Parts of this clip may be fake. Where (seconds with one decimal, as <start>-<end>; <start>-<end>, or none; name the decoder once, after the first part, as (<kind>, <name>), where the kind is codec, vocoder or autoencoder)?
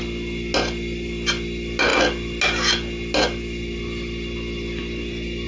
none